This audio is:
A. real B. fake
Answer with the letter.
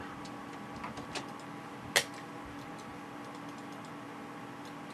A